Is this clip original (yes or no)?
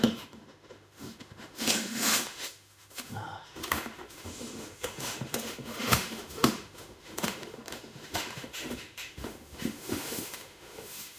no